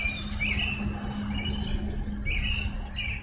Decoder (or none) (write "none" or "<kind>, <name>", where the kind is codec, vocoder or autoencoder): none